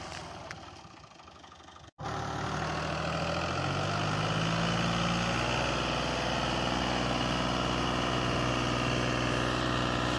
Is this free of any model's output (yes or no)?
yes